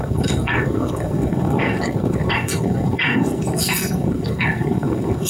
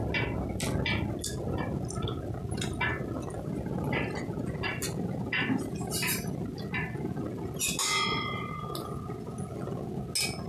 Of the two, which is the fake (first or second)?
first